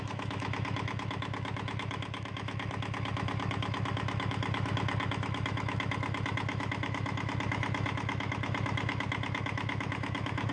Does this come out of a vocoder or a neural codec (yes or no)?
yes